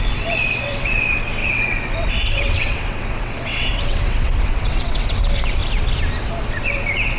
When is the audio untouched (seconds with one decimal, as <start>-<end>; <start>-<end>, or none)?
5.6-6.5